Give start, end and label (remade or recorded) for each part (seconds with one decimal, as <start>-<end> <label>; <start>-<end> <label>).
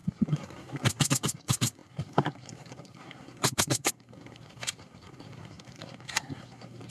0.0-6.9 remade